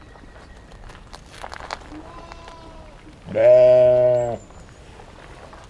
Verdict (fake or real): real